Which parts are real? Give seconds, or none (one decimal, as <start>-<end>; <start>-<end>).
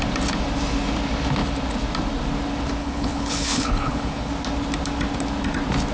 0.0-2.8; 4.3-5.9